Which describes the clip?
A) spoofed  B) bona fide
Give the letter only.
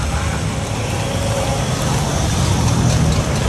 B